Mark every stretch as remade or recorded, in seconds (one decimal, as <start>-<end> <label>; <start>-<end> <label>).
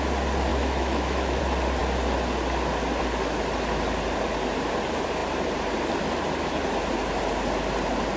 0.0-0.5 recorded; 0.5-1.4 remade; 1.4-8.2 recorded